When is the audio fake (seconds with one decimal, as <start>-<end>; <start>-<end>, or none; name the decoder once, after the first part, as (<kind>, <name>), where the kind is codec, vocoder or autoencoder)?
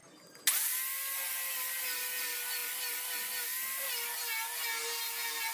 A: none